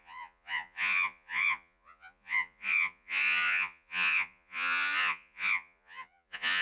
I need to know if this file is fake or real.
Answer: fake